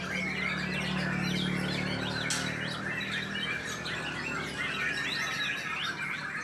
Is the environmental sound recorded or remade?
recorded